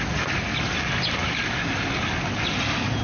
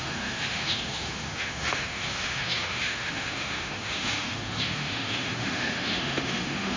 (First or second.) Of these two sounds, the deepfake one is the second